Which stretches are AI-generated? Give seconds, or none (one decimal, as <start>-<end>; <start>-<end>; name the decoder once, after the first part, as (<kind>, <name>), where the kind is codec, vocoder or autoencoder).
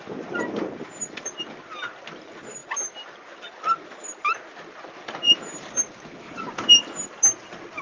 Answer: none